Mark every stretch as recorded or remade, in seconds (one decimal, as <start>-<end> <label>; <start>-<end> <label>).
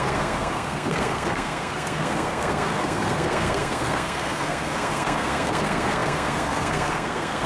0.0-7.5 remade